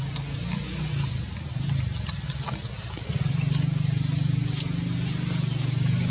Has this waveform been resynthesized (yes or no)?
no